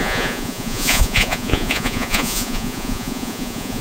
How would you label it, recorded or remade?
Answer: remade